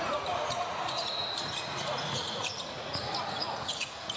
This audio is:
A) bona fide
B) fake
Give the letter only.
B